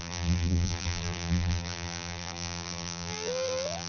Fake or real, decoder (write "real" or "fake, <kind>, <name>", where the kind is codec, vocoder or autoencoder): fake, vocoder, BigVGAN v2